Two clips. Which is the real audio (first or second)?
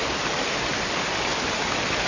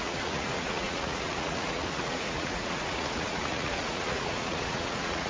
first